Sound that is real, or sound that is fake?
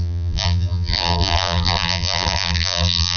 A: fake